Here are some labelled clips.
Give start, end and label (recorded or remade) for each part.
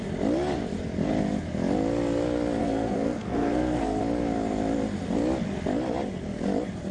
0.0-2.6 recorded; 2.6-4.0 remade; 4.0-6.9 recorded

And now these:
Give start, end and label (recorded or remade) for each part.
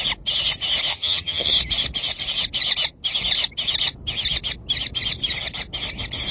0.0-0.9 recorded; 0.9-1.5 remade; 1.5-6.3 recorded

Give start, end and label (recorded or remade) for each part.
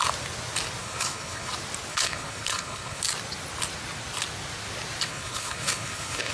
0.0-0.8 recorded; 0.8-1.5 remade; 1.5-1.9 recorded; 1.9-3.0 remade; 3.0-5.1 recorded; 5.1-6.3 remade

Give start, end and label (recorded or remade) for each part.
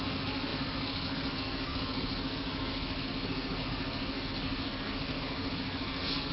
0.0-6.3 remade